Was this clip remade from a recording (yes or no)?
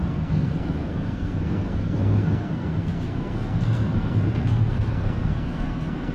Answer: yes